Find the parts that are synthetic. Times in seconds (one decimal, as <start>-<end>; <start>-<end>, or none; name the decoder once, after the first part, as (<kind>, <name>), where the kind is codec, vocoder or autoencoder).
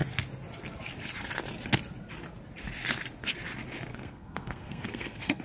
3.9-5.4 (codec, SNAC)